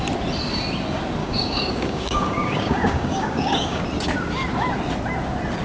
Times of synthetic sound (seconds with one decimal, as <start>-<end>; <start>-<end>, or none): 1.2-3.8